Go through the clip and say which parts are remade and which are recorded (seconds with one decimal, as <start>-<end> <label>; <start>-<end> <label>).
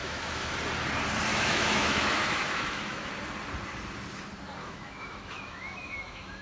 0.0-0.5 remade; 0.5-1.3 recorded; 1.3-3.1 remade; 3.1-4.6 recorded; 4.6-6.4 remade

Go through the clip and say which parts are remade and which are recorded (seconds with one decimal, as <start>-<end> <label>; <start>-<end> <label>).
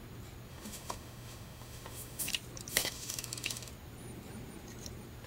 0.0-0.5 recorded; 0.5-2.3 remade; 2.3-2.7 recorded; 2.7-3.7 remade; 3.7-5.3 recorded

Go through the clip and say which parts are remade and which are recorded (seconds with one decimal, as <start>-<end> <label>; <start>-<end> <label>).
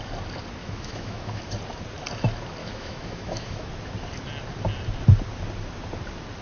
0.0-0.6 recorded; 0.6-1.4 remade; 1.4-2.6 recorded; 2.6-3.7 remade; 3.7-6.4 recorded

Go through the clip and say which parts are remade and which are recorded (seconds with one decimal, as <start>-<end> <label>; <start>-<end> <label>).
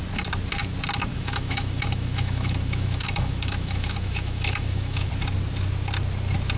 0.0-1.1 recorded; 1.1-5.1 remade; 5.1-6.6 recorded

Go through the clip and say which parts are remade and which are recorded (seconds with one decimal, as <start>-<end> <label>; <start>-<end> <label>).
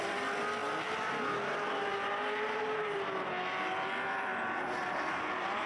0.0-5.7 recorded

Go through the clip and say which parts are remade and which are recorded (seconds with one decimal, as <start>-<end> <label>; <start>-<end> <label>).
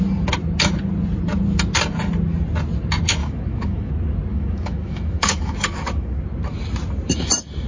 0.0-3.2 recorded; 3.2-3.9 remade; 3.9-4.3 recorded; 4.3-6.2 remade; 6.2-7.7 recorded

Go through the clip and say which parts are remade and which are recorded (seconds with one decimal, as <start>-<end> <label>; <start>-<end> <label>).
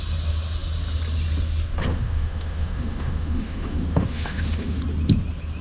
0.0-1.9 recorded; 1.9-4.8 remade; 4.8-5.6 recorded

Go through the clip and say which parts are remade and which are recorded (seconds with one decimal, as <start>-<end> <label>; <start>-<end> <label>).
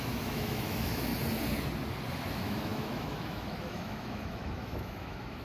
0.0-1.1 remade; 1.1-2.3 recorded; 2.3-5.4 remade